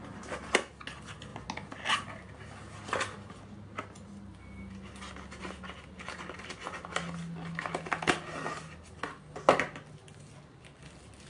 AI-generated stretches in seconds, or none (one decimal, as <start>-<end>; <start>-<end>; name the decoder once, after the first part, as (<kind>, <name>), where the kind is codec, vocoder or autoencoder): none